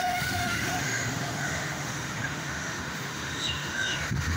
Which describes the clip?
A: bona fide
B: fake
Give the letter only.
B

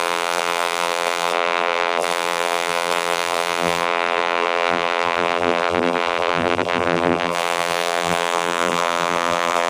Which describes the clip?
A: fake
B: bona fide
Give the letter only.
A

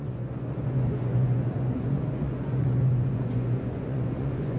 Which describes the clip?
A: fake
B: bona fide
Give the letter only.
A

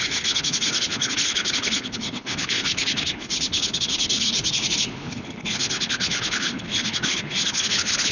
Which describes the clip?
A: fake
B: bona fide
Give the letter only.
A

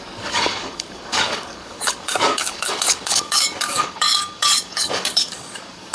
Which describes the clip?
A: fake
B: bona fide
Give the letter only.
A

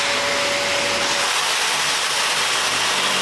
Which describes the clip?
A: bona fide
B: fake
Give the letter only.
A